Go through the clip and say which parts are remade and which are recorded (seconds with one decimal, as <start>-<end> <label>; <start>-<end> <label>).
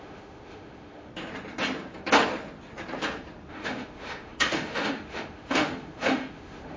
0.0-1.1 remade; 1.1-3.5 recorded; 3.5-6.8 remade